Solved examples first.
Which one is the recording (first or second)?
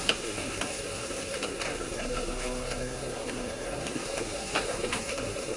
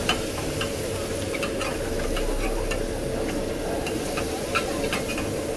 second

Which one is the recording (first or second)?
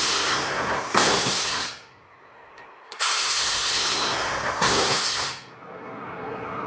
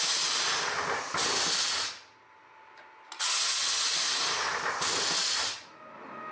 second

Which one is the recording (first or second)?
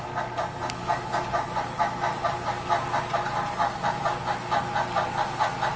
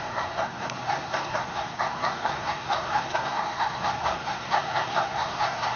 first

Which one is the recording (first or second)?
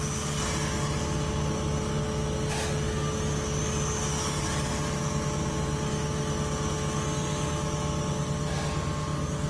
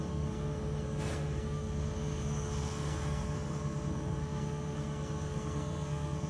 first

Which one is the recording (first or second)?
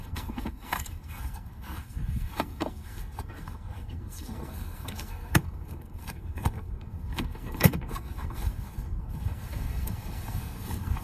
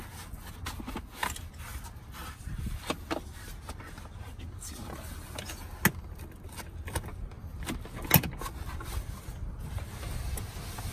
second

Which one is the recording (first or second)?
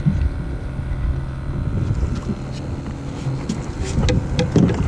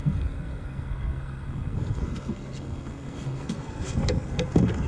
first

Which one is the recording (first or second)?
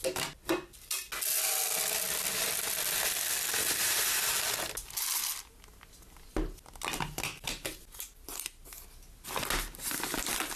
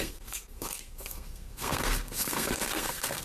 first